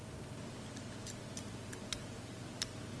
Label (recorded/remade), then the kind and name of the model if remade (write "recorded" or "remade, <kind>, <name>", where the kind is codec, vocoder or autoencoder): recorded